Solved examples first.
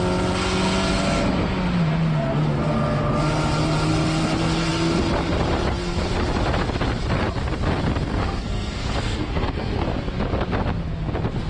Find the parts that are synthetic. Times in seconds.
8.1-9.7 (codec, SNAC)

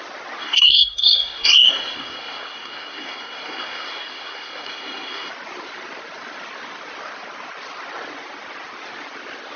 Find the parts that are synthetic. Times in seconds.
0.4-5.3 (codec, SNAC)

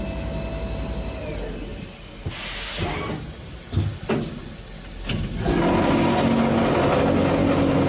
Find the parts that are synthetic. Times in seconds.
none

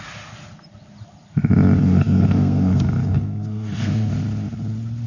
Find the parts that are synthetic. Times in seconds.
1.8-4.1 (codec, SNAC)

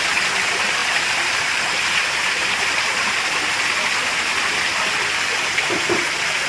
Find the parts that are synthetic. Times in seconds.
none

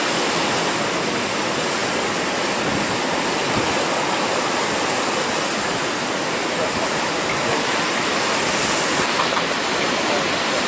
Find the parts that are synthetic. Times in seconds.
none